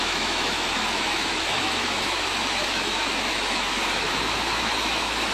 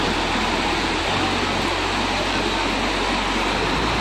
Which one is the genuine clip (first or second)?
second